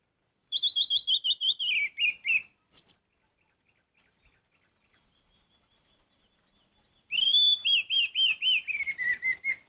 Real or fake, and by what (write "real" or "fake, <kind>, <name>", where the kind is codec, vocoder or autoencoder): fake, vocoder, BigVGAN v2